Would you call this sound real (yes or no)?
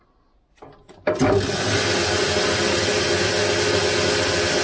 yes